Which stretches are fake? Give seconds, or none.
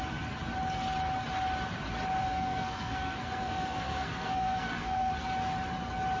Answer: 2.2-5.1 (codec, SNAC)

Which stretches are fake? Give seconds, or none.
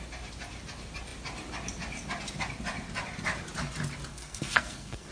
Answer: 4.1-5.1 (codec, SNAC)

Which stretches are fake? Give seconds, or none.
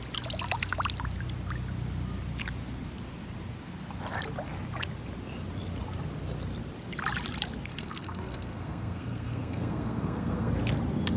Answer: 7.7-10.5 (codec, SNAC)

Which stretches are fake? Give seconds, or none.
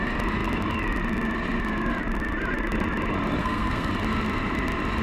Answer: 3.4-3.9 (codec, SNAC)